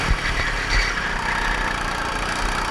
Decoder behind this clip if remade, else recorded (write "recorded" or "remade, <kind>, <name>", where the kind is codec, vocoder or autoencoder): recorded